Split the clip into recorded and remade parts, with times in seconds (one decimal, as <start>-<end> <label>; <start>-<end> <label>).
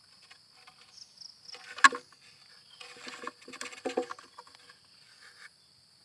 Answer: 0.0-6.0 recorded